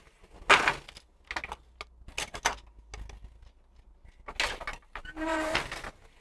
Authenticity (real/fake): real